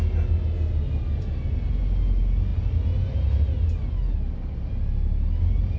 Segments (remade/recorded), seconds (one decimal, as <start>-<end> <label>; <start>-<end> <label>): 0.0-5.8 recorded